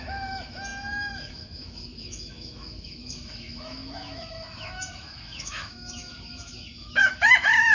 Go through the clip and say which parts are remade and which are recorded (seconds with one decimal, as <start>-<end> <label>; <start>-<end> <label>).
0.0-7.7 remade